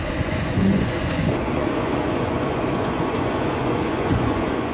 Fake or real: fake